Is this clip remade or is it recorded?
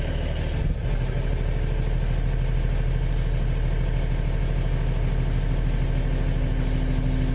recorded